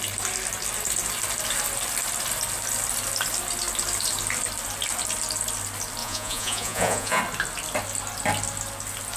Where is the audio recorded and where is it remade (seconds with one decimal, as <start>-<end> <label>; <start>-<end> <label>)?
0.0-6.0 recorded; 6.0-7.2 remade; 7.2-9.2 recorded